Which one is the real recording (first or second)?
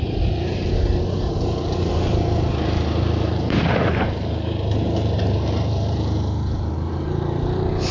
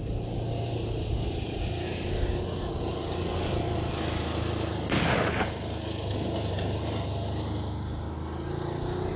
second